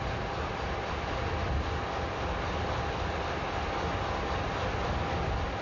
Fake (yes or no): no